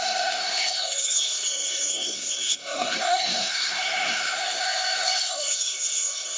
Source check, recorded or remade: remade